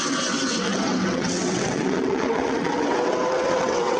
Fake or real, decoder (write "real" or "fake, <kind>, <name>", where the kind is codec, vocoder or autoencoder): fake, vocoder, WaveNeXt